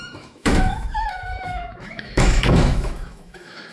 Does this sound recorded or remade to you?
remade